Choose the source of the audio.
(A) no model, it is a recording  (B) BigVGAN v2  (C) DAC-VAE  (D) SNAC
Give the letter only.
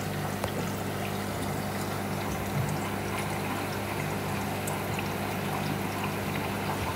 A